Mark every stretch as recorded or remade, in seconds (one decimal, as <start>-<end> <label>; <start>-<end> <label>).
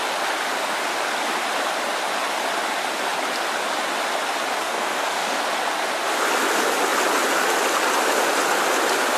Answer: 0.0-4.6 recorded; 4.6-5.4 remade; 5.4-9.2 recorded